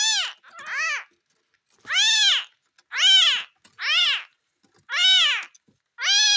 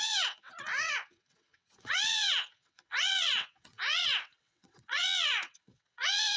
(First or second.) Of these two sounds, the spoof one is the second